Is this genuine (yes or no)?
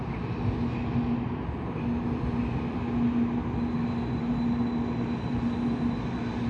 yes